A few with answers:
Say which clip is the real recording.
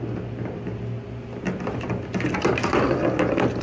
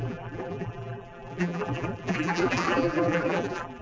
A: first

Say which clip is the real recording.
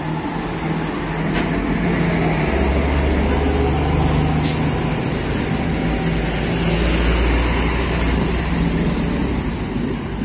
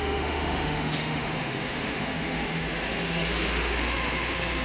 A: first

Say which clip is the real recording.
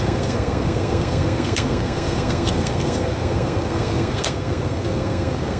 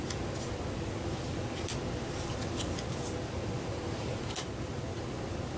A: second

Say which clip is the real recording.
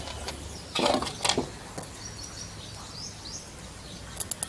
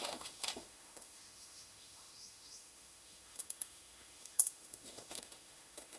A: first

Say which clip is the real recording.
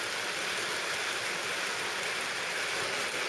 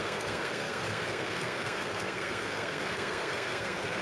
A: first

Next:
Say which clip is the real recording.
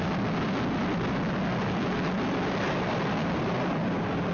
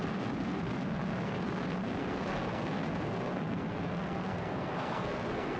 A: first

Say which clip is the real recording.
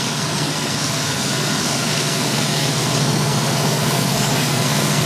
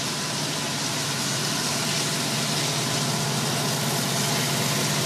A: second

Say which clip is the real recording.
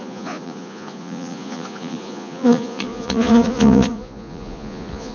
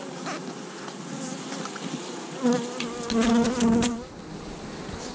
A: second